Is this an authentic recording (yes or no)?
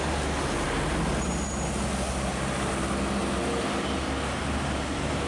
yes